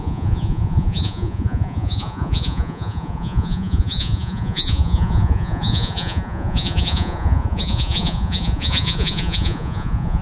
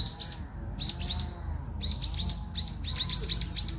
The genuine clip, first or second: second